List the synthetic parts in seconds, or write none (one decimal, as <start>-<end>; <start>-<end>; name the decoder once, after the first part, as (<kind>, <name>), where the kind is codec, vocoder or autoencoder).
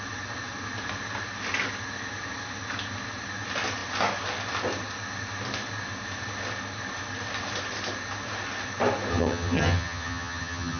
9.1-10.8 (vocoder, HiFi-GAN)